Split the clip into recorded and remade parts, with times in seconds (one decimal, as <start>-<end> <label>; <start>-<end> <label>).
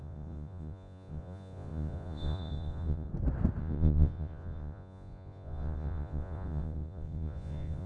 0.0-3.1 remade; 3.1-3.6 recorded; 3.6-7.9 remade